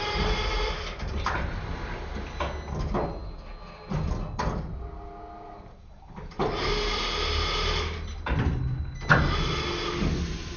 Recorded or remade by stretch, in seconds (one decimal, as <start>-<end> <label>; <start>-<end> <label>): 0.0-10.6 recorded